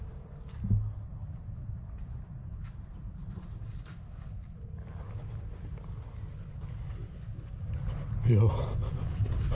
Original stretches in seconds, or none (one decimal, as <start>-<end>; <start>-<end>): 0.0-9.5